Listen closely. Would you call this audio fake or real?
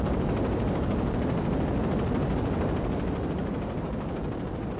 real